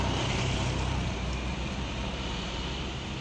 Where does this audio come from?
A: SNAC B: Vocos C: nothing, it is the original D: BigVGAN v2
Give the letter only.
D